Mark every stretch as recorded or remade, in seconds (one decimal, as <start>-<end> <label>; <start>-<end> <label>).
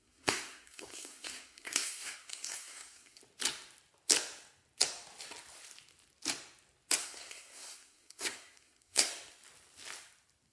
0.0-3.2 remade; 3.2-7.0 recorded; 7.0-9.1 remade; 9.1-10.5 recorded